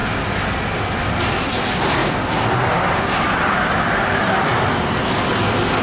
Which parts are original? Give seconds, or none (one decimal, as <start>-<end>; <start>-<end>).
0.0-1.0; 2.0-5.8